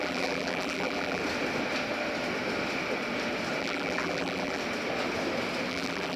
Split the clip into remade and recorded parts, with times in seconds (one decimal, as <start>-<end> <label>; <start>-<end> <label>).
0.0-1.2 remade; 1.2-3.6 recorded; 3.6-4.6 remade; 4.6-5.7 recorded; 5.7-6.2 remade